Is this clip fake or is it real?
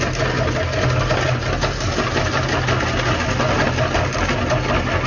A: real